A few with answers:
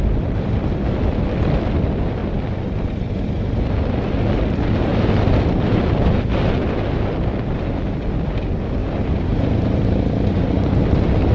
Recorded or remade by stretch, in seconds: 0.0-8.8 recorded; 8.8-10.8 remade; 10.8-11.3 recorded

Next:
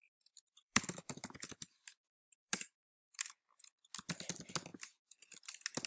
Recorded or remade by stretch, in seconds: 0.0-3.5 remade; 3.5-5.9 recorded